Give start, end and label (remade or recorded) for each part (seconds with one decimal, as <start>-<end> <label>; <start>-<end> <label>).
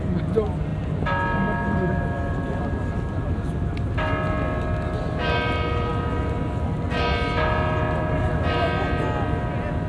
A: 0.0-9.9 recorded